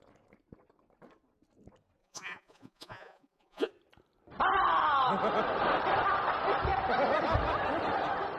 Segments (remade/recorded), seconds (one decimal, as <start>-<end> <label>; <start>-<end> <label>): 0.0-2.0 recorded; 2.0-3.7 remade; 3.7-8.4 recorded